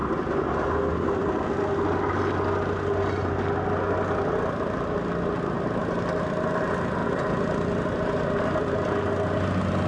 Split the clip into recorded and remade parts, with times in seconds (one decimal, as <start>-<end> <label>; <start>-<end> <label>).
0.0-9.9 recorded